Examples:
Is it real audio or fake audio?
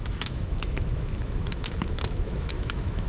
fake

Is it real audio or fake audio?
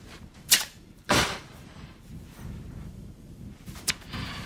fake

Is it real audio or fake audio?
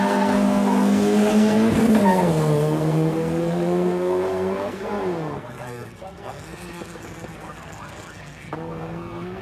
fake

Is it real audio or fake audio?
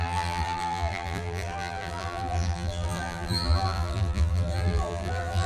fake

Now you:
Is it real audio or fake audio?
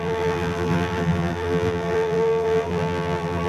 fake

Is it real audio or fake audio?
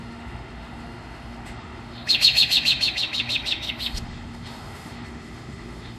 fake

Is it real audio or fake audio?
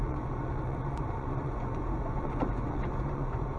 fake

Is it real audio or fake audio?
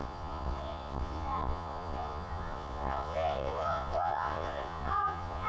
fake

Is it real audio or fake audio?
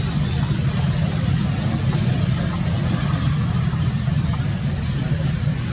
real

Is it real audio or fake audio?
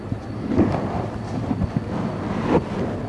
real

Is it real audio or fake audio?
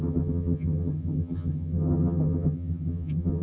fake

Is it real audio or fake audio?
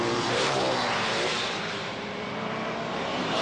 fake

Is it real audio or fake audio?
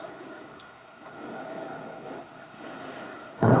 fake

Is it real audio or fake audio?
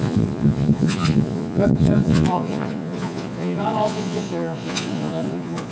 fake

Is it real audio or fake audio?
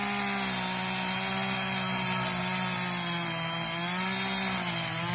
real